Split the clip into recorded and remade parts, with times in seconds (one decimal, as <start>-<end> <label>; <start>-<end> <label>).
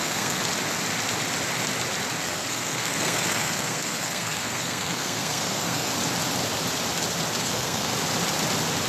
0.0-0.4 remade; 0.4-2.2 recorded; 2.2-5.9 remade; 5.9-7.4 recorded; 7.4-7.9 remade; 7.9-8.9 recorded